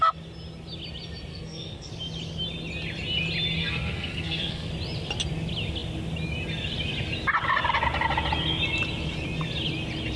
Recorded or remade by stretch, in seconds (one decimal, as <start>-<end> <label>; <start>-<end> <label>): 0.0-1.3 recorded; 1.3-1.9 remade; 1.9-3.6 recorded; 3.6-4.7 remade; 4.7-10.2 recorded